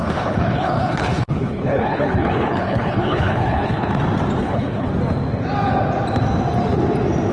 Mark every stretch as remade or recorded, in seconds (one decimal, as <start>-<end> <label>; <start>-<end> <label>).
0.0-3.9 remade; 3.9-4.4 recorded; 4.4-4.9 remade; 4.9-7.3 recorded